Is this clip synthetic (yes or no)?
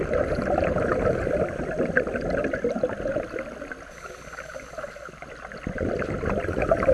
no